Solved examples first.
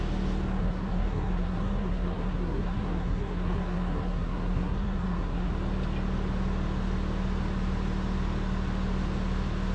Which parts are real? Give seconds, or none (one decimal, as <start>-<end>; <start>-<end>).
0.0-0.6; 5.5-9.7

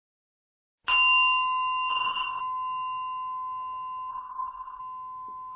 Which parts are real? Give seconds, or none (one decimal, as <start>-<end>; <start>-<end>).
0.0-1.9; 2.4-4.1; 4.8-5.6

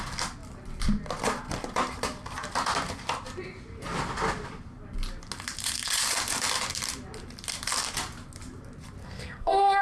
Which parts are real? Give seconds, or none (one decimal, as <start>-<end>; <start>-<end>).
0.0-9.0

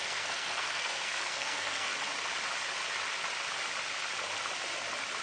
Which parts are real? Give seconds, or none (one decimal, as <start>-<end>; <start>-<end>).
1.9-5.2